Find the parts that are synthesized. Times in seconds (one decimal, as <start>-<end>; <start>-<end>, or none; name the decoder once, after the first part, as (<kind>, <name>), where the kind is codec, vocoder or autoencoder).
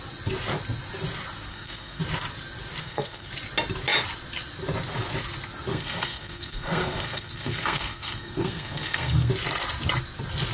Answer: 1.5-2.0 (codec, SNAC); 2.8-3.3; 5.7-9.3